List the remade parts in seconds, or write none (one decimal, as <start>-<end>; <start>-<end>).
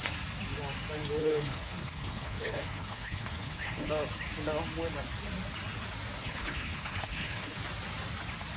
1.2-3.9; 6.2-7.6